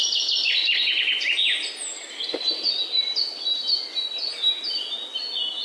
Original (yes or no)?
yes